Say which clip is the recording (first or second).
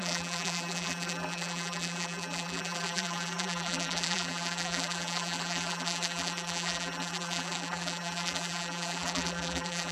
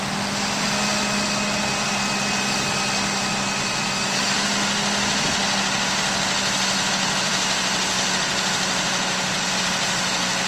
second